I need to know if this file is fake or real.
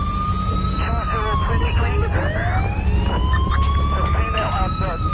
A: real